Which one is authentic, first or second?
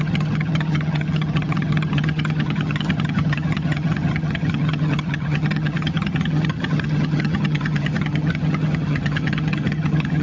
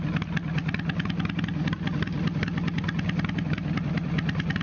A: second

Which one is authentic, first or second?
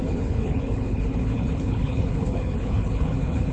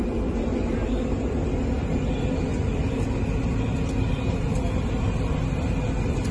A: second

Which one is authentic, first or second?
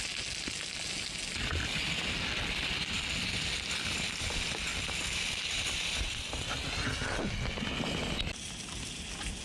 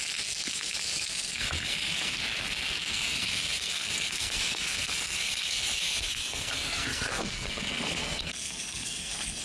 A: first